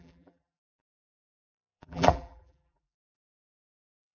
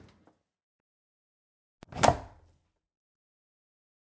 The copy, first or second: first